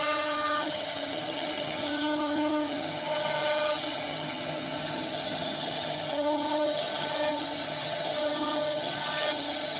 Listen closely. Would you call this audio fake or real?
fake